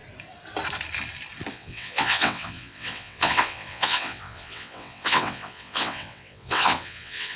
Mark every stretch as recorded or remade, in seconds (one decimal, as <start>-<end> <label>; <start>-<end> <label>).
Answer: 0.0-1.5 recorded; 1.5-7.4 remade